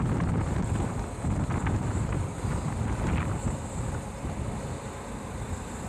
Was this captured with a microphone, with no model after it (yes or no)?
yes